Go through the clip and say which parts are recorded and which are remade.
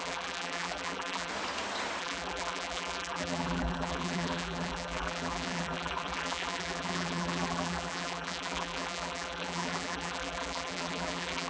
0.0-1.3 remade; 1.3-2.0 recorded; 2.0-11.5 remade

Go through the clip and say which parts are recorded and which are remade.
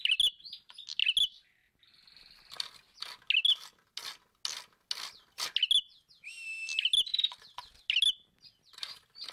0.0-9.3 recorded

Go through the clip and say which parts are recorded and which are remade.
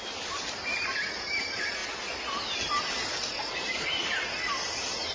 0.0-5.1 recorded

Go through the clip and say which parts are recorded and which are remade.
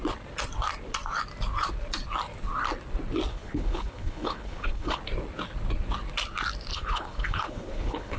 0.0-3.3 recorded; 3.3-5.0 remade; 5.0-6.7 recorded; 6.7-8.2 remade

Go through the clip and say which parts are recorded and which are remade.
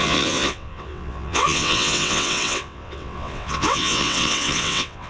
0.0-5.1 remade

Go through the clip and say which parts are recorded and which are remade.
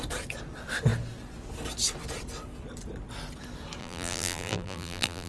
0.0-3.8 recorded; 3.8-5.3 remade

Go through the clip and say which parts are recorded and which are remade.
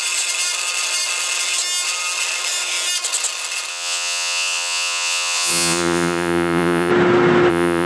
0.0-3.7 recorded; 3.7-6.9 remade; 6.9-7.5 recorded; 7.5-7.9 remade